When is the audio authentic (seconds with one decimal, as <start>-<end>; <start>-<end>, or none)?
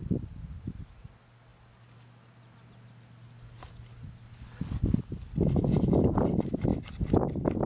0.0-7.7